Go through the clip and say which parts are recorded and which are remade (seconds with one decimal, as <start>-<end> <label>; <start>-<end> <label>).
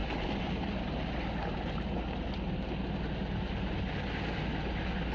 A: 0.0-5.1 recorded